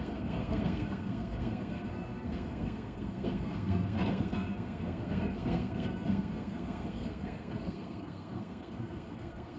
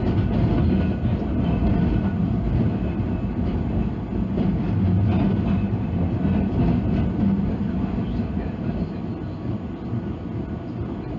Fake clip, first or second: first